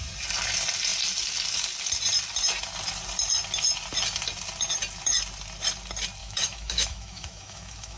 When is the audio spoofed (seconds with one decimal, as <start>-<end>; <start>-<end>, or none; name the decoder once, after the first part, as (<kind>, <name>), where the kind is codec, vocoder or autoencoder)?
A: 6.2-8.0 (autoencoder, DAC-VAE)